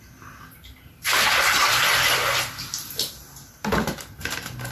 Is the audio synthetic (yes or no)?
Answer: no